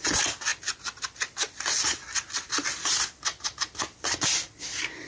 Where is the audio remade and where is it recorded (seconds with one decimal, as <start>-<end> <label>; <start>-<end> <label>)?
0.0-5.1 recorded